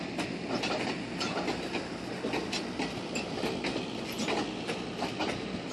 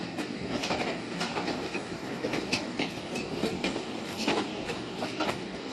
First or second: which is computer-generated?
second